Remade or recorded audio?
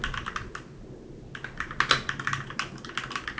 recorded